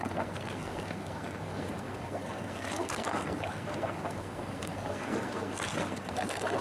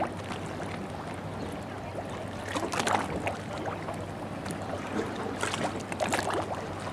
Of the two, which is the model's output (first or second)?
first